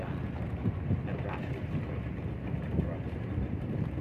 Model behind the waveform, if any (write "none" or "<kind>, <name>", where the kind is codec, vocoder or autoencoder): none